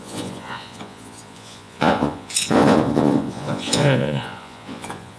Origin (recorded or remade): remade